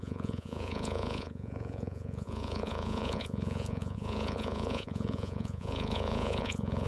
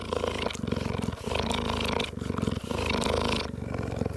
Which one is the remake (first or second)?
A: first